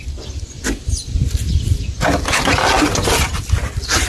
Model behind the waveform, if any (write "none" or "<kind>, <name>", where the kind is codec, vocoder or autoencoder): none